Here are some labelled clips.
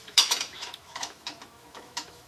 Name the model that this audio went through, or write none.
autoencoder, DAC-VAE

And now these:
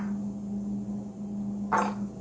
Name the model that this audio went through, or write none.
none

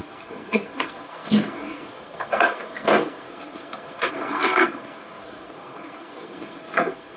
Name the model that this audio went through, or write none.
codec, SNAC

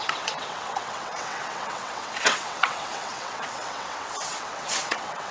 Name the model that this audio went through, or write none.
vocoder, WaveNeXt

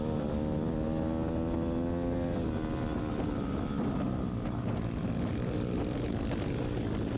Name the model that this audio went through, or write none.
none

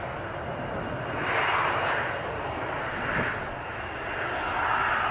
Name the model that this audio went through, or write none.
none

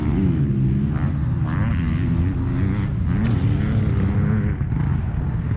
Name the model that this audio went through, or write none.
none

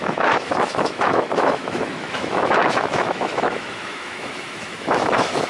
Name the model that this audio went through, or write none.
autoencoder, DAC-VAE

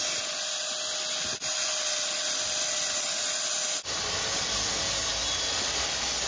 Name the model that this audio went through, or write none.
none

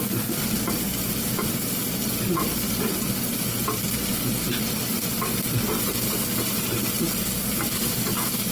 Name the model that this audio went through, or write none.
none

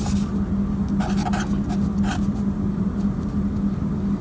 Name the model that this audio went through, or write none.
none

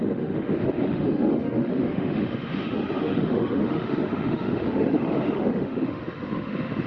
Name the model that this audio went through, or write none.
autoencoder, DAC-VAE